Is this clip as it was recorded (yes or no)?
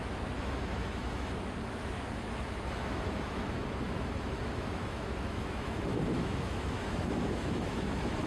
no